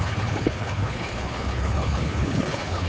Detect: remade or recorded remade